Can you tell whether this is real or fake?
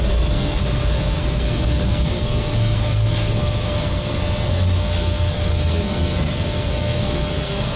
fake